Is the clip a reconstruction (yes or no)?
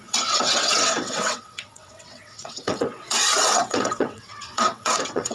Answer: yes